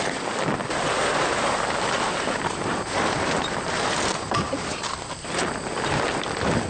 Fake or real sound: real